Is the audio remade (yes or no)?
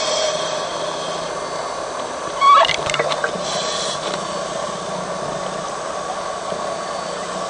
no